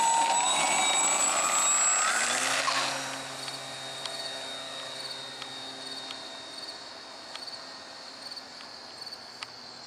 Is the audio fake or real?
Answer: real